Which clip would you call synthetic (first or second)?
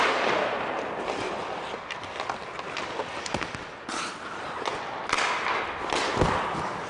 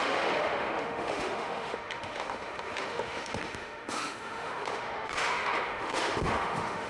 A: second